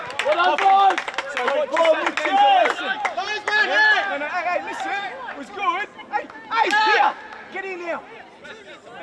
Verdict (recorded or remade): recorded